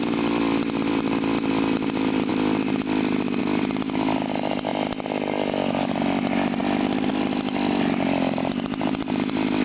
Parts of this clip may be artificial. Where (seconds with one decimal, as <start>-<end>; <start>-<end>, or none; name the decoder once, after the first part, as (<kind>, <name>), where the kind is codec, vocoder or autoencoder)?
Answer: 0.0-4.7 (vocoder, BigVGAN v2); 5.8-9.6